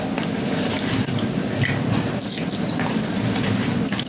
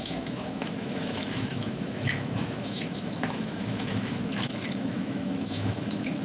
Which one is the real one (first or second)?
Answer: first